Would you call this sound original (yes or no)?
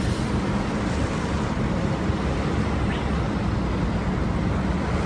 yes